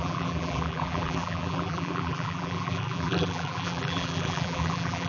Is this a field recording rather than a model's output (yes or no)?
no